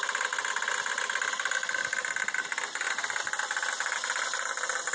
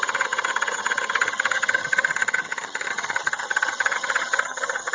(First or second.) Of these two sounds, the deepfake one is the second